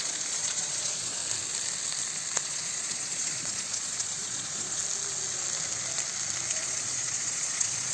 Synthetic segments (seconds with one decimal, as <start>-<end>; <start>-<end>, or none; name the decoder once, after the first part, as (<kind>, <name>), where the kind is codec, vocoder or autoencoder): 0.0-1.2 (vocoder, Vocos); 2.4-4.8; 6.5-7.9